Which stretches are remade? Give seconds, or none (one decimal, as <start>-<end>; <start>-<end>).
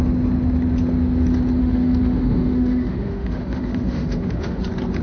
1.6-4.6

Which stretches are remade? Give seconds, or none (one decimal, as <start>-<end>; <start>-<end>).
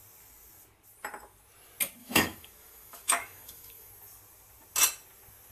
2.0-3.9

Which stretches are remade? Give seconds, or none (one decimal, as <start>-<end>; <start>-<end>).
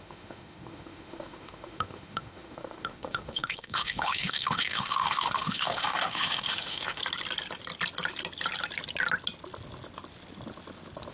0.0-7.0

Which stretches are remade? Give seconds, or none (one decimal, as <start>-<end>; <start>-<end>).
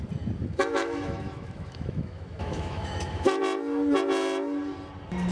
0.4-3.4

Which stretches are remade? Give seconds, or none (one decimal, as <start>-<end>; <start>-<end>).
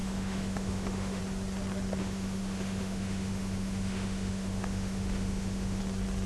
0.0-1.2; 2.0-5.8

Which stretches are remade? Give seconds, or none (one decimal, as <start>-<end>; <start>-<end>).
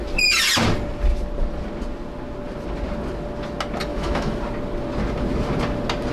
3.9-4.4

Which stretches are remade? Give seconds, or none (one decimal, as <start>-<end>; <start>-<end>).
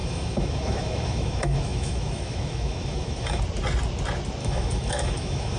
0.0-3.4; 4.4-5.6